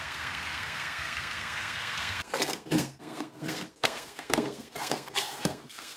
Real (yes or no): no